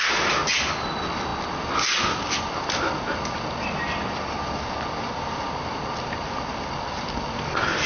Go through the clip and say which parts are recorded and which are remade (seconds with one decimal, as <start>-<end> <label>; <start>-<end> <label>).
0.0-7.9 recorded